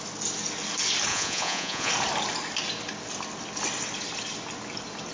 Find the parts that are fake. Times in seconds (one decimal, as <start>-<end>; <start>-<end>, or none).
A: 1.1-1.9